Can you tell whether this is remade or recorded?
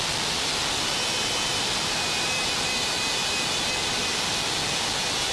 recorded